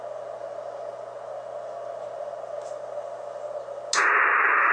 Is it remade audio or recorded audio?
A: recorded